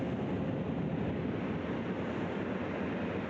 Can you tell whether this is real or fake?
real